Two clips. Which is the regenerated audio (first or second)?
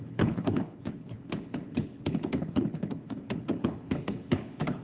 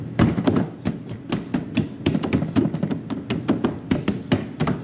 first